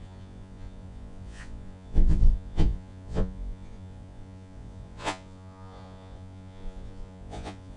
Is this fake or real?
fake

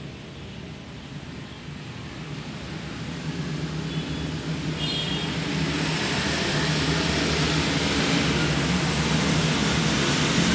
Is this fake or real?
real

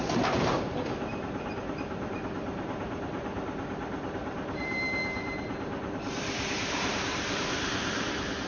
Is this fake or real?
fake